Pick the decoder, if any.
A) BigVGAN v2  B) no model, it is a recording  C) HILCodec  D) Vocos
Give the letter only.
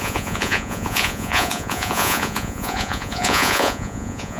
D